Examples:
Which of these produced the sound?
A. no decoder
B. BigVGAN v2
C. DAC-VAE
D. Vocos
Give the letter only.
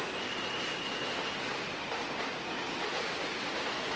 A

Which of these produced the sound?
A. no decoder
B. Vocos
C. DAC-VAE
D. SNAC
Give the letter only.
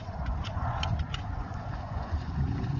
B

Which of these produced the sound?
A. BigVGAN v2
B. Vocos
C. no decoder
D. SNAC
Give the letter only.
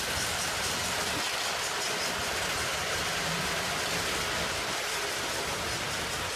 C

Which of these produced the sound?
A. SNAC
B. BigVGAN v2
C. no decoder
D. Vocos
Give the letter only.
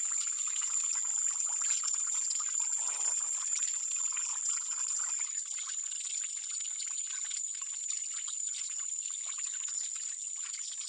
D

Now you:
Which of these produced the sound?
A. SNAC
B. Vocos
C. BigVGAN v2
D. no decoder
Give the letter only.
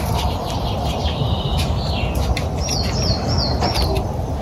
D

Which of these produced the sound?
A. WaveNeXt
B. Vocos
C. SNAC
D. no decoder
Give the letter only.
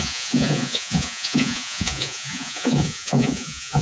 B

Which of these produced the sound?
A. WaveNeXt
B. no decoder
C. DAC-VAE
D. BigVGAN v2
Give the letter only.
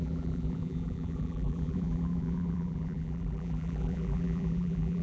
D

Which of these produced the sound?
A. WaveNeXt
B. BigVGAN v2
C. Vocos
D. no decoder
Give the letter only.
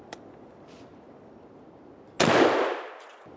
D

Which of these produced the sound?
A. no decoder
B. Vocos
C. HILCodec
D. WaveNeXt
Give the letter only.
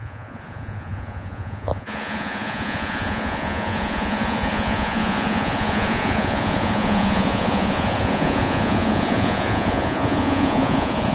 B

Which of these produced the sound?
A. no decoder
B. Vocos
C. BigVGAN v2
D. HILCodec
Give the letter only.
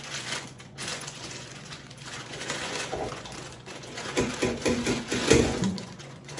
B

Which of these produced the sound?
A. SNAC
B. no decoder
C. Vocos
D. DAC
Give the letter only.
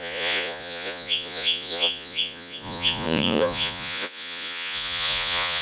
C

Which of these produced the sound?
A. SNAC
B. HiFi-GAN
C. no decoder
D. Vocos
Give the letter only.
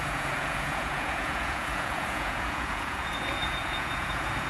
D